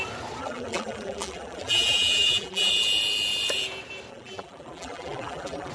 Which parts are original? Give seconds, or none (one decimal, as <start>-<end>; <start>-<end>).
0.0-0.4; 2.7-4.1